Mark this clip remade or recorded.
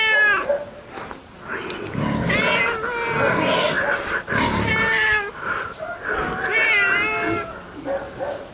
recorded